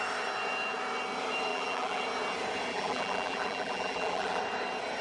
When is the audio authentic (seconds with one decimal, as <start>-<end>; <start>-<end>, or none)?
0.0-1.5; 2.0-2.7; 4.4-5.0